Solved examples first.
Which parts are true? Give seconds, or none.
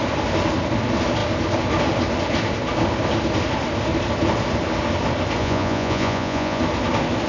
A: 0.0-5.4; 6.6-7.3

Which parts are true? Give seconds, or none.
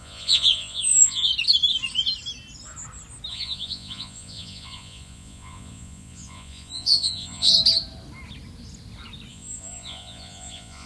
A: 1.3-3.3; 7.5-9.3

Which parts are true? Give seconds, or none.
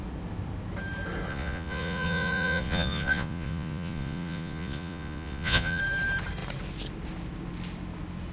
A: 0.0-1.3; 5.8-8.3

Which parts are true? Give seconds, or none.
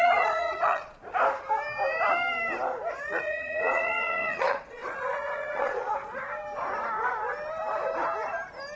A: 1.0-2.9; 5.9-8.8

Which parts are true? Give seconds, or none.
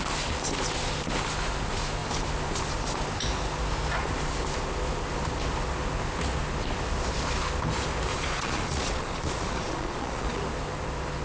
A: 0.0-8.1; 10.4-11.2